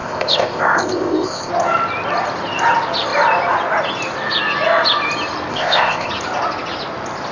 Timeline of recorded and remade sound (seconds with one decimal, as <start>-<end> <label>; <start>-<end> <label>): 0.0-1.5 remade; 1.5-5.5 recorded; 5.5-6.1 remade; 6.1-7.3 recorded